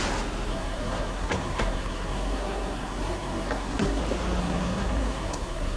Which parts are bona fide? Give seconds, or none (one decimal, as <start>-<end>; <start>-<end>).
0.0-0.5; 4.0-4.4